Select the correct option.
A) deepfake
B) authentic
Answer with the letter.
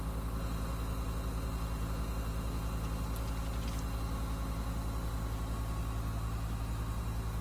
B